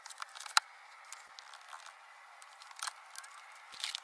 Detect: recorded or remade recorded